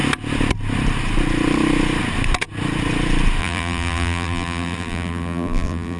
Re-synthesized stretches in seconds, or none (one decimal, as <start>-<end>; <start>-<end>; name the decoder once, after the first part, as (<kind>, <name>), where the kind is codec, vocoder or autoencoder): 3.4-6.0 (vocoder, BigVGAN v2)